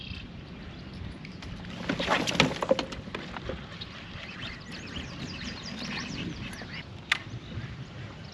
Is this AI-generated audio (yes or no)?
no